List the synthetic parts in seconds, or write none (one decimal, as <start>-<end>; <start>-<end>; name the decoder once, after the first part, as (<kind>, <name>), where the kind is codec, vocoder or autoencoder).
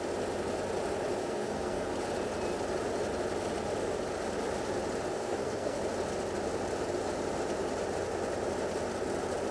1.2-1.9 (codec, SNAC); 5.1-5.8